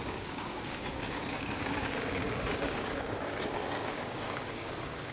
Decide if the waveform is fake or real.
fake